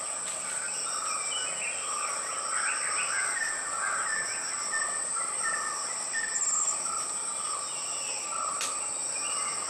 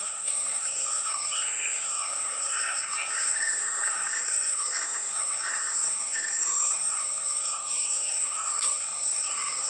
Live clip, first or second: first